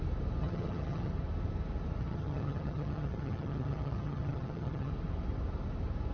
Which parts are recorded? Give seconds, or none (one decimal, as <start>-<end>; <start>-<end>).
0.0-0.4; 1.1-2.0; 4.9-6.1